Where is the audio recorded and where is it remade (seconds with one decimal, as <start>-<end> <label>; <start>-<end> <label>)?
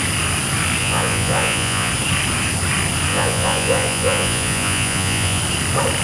0.0-0.8 recorded; 0.8-1.9 remade; 1.9-3.1 recorded; 3.1-5.4 remade; 5.4-6.0 recorded